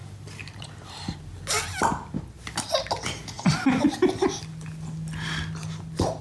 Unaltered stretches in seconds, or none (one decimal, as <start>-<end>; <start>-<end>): 0.0-6.2